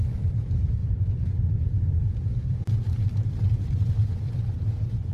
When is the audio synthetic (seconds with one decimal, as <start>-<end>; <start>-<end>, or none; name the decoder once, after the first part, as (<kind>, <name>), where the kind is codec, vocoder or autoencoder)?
0.0-5.1 (vocoder, BigVGAN v2)

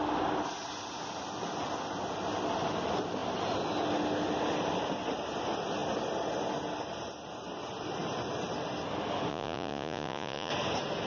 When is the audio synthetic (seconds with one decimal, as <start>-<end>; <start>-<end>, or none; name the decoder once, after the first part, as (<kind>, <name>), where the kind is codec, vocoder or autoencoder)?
9.3-10.5 (vocoder, Vocos)

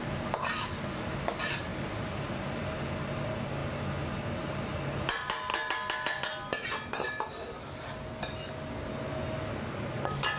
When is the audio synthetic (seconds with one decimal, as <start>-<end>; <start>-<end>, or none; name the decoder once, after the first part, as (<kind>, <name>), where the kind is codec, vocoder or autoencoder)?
none

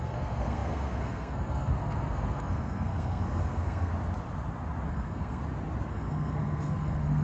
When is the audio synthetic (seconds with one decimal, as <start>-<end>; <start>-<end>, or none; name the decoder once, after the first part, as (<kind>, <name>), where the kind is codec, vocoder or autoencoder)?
0.0-3.9 (codec, SNAC); 4.9-5.4; 5.9-7.2

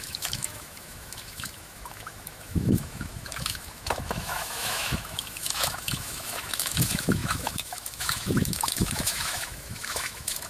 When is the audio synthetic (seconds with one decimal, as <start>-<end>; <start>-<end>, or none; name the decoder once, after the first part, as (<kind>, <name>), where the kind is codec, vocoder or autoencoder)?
0.0-10.5 (autoencoder, DAC-VAE)

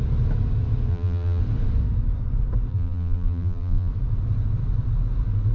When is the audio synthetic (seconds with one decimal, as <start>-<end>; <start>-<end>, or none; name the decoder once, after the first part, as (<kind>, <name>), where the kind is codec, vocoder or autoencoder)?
0.9-1.4 (vocoder, BigVGAN v2); 2.7-3.9

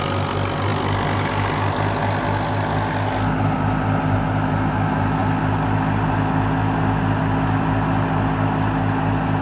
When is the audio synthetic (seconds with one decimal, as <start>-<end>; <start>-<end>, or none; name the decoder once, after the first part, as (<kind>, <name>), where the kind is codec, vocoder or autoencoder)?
none